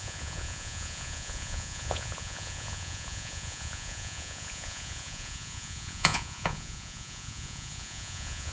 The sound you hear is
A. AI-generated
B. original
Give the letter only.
A